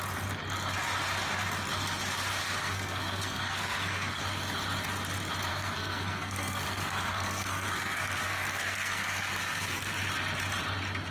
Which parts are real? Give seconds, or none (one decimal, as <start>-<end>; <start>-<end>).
0.0-2.6; 4.2-5.5; 9.9-11.1